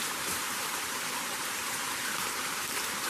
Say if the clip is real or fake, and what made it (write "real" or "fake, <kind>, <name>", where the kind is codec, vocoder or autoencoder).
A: fake, vocoder, BigVGAN v2